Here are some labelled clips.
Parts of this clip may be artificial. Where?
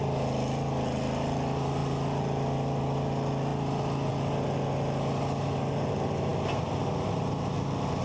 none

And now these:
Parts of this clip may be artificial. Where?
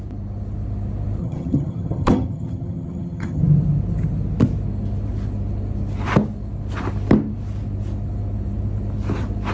1.2-3.4 (vocoder, HiFi-GAN)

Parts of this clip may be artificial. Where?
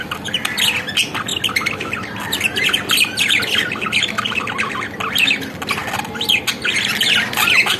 none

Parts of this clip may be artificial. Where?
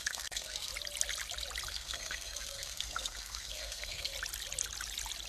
0.0-0.7 (codec, SNAC); 1.7-4.1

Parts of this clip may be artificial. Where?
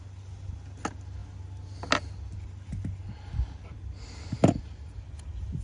none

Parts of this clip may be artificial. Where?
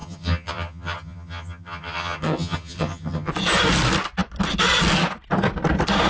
0.0-3.3 (vocoder, HiFi-GAN)